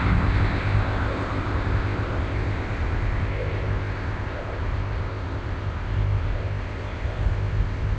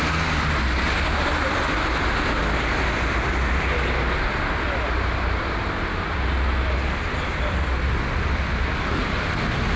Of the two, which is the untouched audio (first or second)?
second